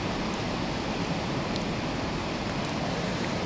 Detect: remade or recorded recorded